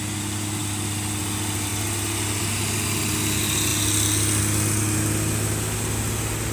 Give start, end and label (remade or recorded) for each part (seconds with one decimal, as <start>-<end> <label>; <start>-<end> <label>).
0.0-6.5 recorded